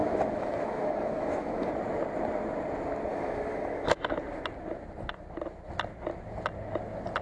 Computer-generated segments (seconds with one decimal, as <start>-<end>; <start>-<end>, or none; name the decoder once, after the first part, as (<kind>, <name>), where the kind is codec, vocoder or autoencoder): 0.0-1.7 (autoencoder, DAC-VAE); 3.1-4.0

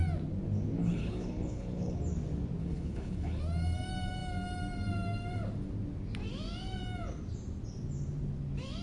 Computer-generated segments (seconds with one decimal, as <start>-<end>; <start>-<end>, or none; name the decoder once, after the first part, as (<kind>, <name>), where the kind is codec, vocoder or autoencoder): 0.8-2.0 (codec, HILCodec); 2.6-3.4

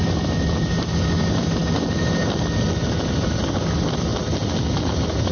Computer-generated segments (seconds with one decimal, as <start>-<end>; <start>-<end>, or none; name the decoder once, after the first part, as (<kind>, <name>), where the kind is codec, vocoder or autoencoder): none